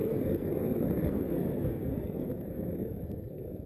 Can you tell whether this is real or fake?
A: fake